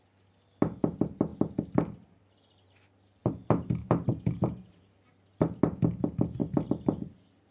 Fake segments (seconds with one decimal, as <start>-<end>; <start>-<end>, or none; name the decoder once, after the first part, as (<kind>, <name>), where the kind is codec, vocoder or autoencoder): 3.2-4.9 (vocoder, BigVGAN v2); 6.4-7.1